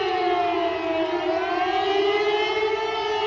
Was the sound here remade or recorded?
recorded